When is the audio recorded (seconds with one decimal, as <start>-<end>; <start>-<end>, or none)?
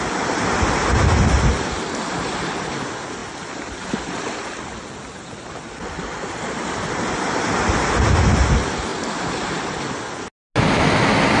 0.0-3.2; 6.3-11.4